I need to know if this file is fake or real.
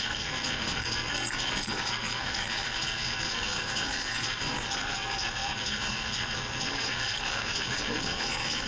fake